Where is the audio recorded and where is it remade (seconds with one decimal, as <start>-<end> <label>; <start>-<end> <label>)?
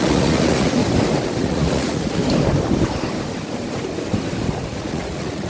0.0-0.8 remade; 0.8-1.4 recorded; 1.4-2.2 remade; 2.2-4.7 recorded; 4.7-5.5 remade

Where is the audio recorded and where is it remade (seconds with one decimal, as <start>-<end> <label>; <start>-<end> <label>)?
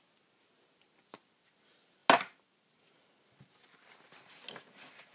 0.0-5.1 recorded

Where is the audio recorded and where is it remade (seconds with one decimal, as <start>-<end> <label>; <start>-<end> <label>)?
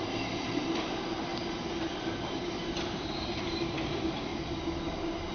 0.0-1.3 remade; 1.3-2.3 recorded; 2.3-4.3 remade; 4.3-5.3 recorded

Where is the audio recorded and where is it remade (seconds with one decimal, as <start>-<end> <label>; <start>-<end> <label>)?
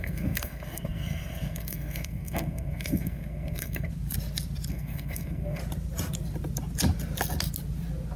0.0-3.9 remade; 3.9-4.7 recorded; 4.7-5.6 remade; 5.6-8.2 recorded